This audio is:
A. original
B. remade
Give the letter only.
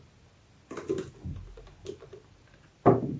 A